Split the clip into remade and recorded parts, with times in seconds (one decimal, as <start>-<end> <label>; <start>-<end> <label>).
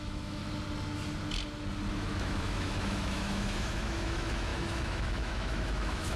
0.0-0.4 remade; 0.4-1.9 recorded; 1.9-6.2 remade